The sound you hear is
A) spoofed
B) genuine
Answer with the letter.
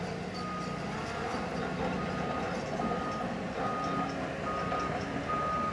B